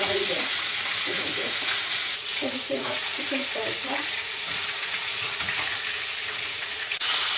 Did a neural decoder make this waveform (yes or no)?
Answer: yes